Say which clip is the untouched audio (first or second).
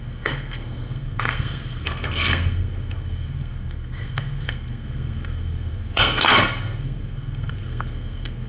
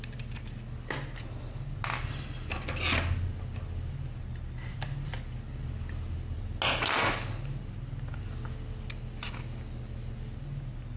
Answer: second